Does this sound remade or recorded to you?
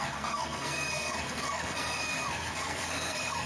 remade